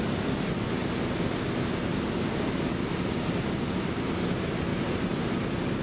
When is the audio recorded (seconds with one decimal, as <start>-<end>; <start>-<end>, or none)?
0.0-4.7; 5.3-5.8